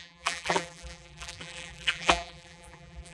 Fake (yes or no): yes